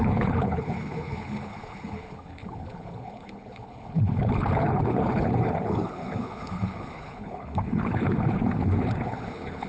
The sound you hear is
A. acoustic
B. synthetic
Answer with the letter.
B